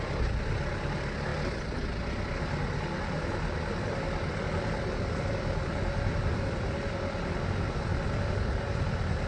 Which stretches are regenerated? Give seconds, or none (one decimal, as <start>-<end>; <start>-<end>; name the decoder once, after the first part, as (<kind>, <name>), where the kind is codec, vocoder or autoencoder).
none

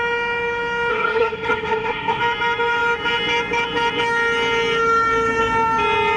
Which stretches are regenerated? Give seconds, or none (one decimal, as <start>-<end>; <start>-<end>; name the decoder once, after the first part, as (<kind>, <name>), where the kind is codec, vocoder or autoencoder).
0.9-2.2 (codec, SNAC)

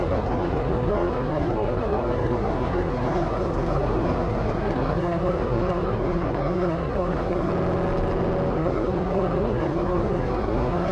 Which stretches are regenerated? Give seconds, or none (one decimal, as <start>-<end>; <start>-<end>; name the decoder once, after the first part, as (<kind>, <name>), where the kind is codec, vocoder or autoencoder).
0.0-7.5 (codec, SNAC); 8.5-10.9

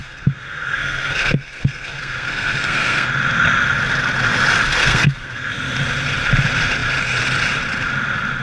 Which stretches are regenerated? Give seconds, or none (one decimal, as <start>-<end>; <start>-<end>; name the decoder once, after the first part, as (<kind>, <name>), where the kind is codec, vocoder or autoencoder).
0.0-3.1 (codec, SNAC); 4.8-5.5